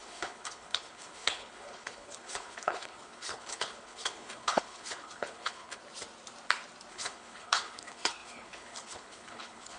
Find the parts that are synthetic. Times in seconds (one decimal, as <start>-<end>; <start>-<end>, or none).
0.0-5.8; 6.9-9.8